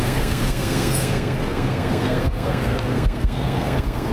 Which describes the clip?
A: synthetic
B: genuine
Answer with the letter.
A